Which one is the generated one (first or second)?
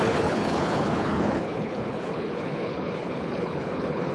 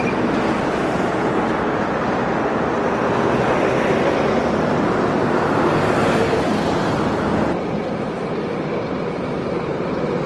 first